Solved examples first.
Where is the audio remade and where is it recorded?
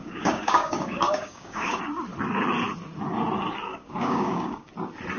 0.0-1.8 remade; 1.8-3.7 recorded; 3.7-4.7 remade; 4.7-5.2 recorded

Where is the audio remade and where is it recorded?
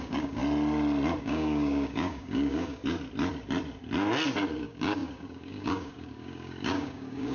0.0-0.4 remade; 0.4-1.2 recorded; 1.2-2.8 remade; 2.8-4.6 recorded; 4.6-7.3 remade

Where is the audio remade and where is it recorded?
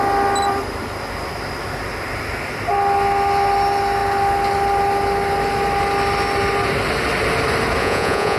0.0-7.8 recorded; 7.8-8.4 remade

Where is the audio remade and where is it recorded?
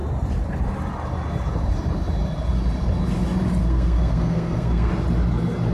0.0-3.6 recorded; 3.6-4.9 remade; 4.9-5.7 recorded